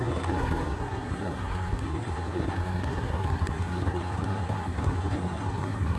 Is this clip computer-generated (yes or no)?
yes